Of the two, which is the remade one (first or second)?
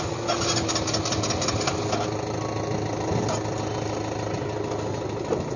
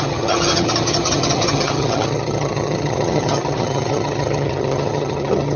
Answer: second